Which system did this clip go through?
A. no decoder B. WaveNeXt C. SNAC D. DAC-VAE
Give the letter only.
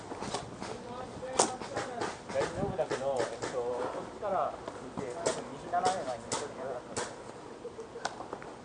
A